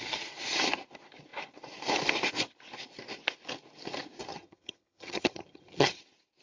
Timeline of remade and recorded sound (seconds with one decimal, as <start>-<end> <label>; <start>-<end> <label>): 0.0-4.3 recorded; 4.3-6.0 remade; 6.0-6.4 recorded